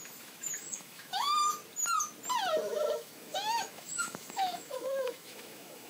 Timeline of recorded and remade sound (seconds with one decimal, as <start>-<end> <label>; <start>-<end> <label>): 0.0-1.6 remade; 1.6-2.7 recorded; 2.7-5.9 remade